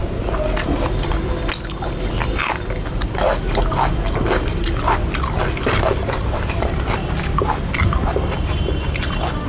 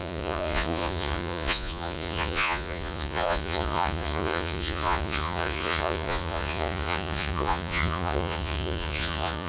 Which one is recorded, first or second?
first